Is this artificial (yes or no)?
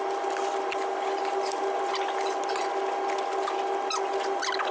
no